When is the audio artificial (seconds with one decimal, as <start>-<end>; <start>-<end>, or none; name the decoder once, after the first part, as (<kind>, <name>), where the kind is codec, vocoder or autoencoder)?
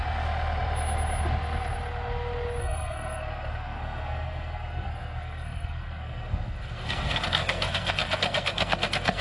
2.6-9.2 (codec, SNAC)